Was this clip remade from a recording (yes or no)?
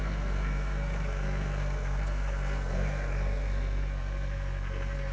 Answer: yes